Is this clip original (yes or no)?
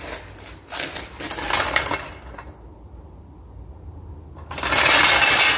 yes